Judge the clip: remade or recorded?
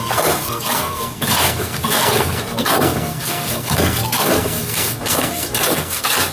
remade